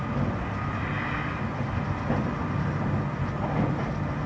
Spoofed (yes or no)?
no